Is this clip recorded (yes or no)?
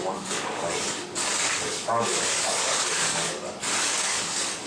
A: no